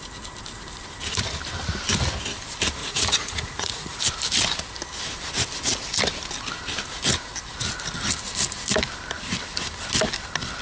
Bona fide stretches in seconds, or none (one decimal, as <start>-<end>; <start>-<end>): 0.0-2.8; 4.0-10.6